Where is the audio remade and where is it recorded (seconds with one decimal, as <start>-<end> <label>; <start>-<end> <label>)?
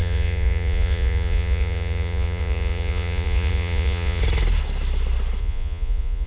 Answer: 0.0-4.2 remade; 4.2-5.4 recorded; 5.4-6.3 remade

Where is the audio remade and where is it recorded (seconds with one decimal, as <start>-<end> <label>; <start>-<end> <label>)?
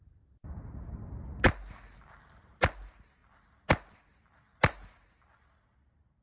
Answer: 0.0-6.2 recorded